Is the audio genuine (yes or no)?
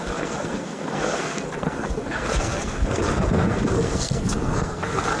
no